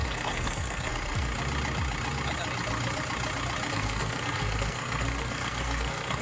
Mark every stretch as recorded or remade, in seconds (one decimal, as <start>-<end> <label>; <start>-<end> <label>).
0.0-1.3 remade; 1.3-3.7 recorded; 3.7-6.2 remade